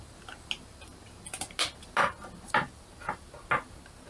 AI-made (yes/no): no